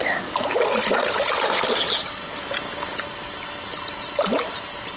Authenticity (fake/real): real